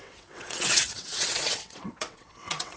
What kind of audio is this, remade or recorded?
remade